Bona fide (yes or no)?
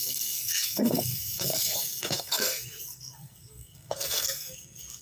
no